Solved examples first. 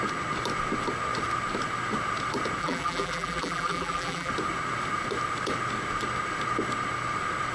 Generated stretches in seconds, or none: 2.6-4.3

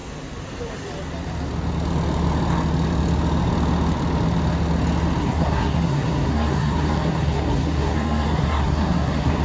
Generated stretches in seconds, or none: 5.2-9.4